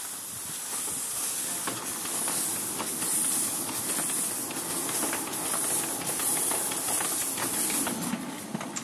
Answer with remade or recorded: recorded